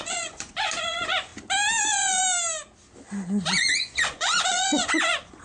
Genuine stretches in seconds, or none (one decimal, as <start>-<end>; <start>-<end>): 1.3-1.8; 2.2-3.1